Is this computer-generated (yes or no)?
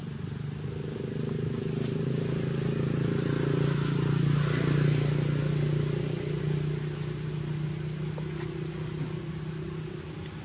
no